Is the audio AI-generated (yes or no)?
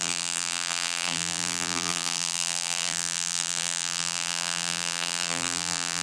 yes